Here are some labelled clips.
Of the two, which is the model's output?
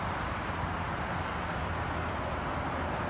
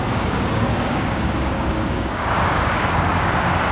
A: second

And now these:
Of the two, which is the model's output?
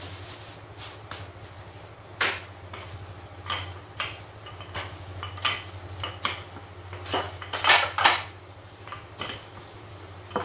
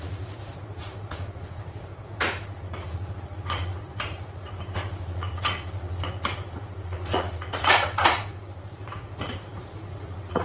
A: second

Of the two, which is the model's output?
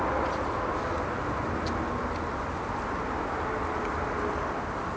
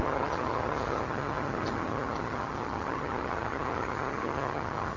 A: second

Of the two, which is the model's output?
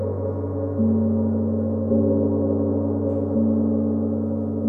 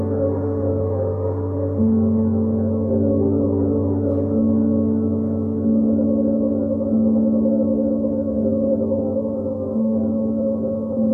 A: second